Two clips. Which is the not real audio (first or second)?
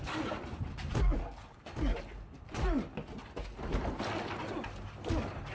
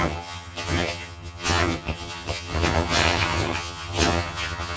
second